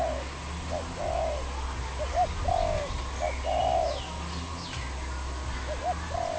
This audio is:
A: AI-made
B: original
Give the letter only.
B